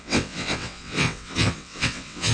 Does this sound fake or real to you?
fake